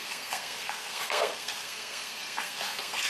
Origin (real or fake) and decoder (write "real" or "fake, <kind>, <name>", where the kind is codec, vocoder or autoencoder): fake, codec, SNAC